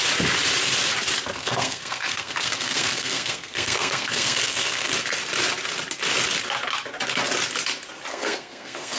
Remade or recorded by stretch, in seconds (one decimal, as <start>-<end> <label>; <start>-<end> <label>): 0.0-1.4 recorded; 1.4-4.9 remade; 4.9-8.1 recorded; 8.1-9.0 remade